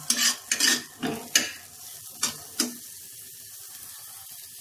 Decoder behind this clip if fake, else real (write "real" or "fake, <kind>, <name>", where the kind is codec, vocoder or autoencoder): real